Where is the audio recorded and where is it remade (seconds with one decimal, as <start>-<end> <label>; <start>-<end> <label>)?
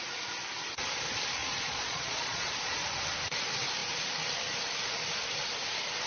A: 0.0-1.4 recorded; 1.4-2.9 remade; 2.9-6.1 recorded